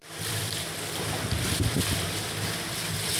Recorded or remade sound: remade